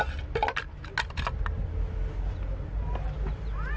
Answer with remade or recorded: recorded